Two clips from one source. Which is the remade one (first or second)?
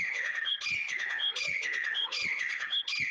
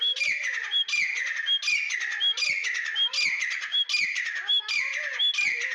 first